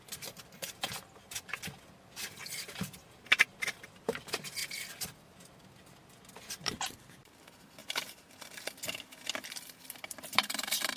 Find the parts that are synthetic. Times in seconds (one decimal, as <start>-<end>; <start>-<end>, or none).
none